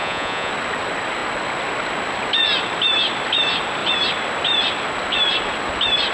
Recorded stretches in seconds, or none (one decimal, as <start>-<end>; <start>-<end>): 0.5-6.1